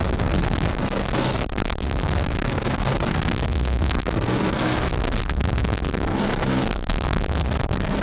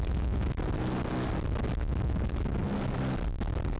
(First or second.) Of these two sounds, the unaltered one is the second